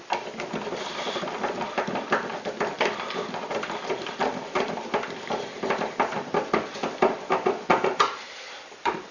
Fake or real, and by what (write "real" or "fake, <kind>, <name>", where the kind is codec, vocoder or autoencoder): fake, vocoder, BigVGAN v2